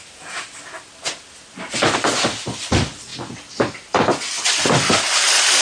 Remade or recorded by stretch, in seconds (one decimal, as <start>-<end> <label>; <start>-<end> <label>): 0.0-5.6 recorded